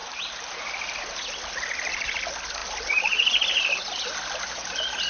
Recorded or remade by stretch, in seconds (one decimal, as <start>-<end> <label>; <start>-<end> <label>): 0.0-0.6 remade; 0.6-5.1 recorded